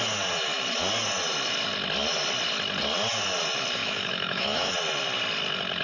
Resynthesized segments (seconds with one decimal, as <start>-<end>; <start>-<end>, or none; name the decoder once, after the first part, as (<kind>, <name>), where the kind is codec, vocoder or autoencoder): 3.8-4.7 (autoencoder, DAC-VAE)